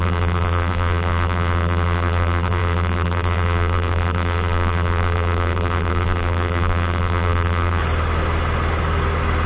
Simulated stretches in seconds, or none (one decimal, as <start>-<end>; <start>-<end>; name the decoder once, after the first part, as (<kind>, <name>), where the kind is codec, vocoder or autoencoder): 0.0-7.8 (vocoder, BigVGAN v2)